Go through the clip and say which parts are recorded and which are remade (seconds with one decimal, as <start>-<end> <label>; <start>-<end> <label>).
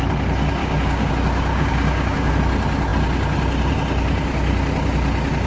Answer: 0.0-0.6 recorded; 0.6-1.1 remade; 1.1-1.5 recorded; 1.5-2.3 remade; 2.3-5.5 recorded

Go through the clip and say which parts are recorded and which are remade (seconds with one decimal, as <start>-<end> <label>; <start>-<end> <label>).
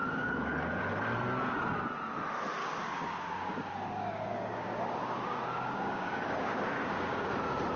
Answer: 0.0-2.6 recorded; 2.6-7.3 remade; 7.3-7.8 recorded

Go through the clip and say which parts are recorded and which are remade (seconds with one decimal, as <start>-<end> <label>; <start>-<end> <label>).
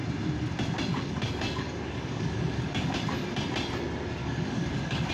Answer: 0.0-0.9 recorded; 0.9-3.0 remade; 3.0-4.2 recorded; 4.2-5.1 remade